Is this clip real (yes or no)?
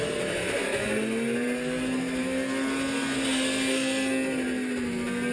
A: yes